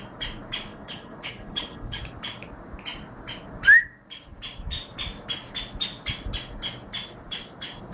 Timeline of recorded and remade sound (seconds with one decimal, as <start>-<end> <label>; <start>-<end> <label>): 0.0-0.7 recorded; 0.7-2.0 remade; 2.0-7.9 recorded